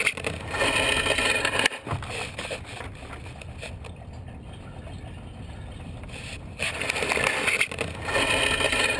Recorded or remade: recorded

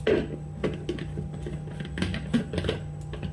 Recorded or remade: recorded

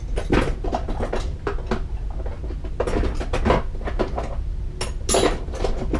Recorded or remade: recorded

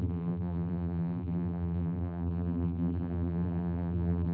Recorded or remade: remade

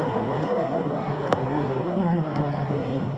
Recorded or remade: remade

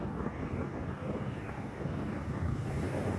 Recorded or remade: remade